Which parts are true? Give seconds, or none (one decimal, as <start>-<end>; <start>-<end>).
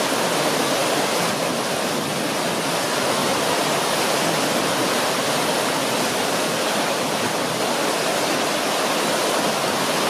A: 0.0-3.2; 7.8-10.1